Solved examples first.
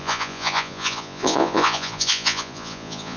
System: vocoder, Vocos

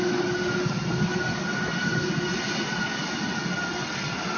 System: none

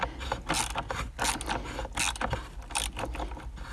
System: none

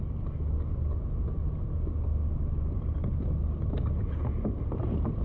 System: none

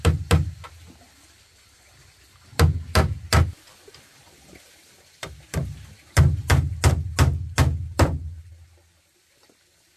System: none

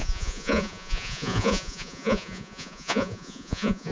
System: vocoder, Vocos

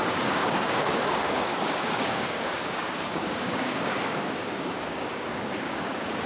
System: codec, DAC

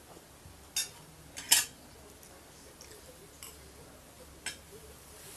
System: none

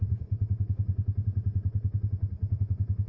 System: vocoder, Vocos